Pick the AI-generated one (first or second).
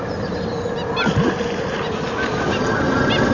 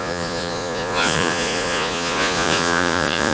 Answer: second